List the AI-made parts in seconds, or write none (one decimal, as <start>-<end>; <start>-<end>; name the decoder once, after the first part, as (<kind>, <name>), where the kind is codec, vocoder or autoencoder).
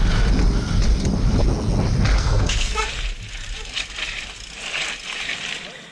2.2-2.9 (codec, SNAC)